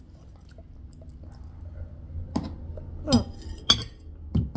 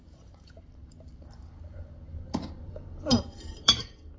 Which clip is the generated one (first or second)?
second